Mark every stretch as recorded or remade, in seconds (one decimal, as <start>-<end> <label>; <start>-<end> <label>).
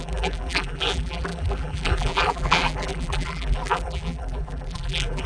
0.0-5.3 remade